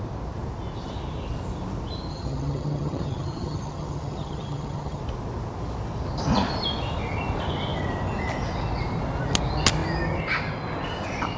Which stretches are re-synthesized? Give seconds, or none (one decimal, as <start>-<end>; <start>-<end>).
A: 2.1-5.0